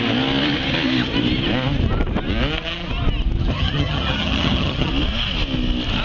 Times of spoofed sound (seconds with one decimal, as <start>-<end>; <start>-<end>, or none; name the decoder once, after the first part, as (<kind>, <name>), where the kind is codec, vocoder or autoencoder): 3.5-4.9 (vocoder, HiFi-GAN)